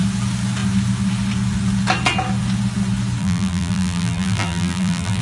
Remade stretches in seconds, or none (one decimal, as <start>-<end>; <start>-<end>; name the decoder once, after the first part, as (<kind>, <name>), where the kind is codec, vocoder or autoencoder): 3.2-5.2 (vocoder, BigVGAN v2)